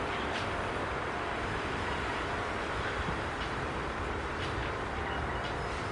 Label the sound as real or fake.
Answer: fake